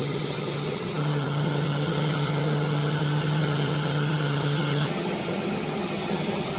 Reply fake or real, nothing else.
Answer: fake